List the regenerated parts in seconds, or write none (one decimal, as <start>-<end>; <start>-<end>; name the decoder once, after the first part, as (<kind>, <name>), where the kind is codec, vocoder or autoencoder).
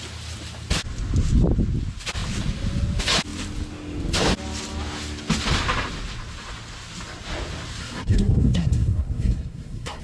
7.8-10.0 (codec, SNAC)